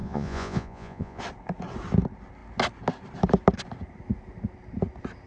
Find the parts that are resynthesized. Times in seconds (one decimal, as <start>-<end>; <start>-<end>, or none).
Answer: 0.0-1.2